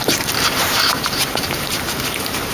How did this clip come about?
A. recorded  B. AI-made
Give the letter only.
B